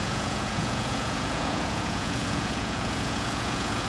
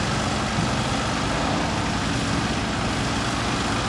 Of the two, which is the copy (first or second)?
first